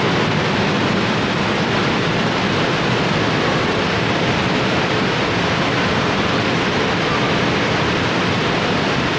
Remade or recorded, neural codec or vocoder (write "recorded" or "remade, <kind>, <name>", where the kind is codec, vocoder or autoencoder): remade, vocoder, BigVGAN v2